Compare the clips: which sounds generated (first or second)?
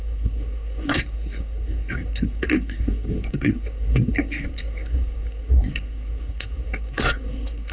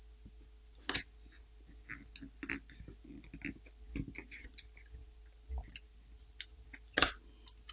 first